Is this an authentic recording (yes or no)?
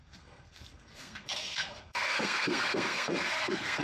no